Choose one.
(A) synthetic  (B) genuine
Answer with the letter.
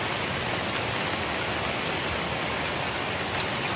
B